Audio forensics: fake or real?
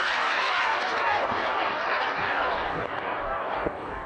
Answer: fake